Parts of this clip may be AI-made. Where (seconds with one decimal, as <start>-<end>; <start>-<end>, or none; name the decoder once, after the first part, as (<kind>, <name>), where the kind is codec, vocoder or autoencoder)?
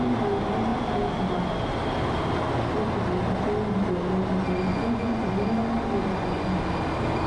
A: 4.7-5.3 (vocoder, Vocos); 6.0-6.6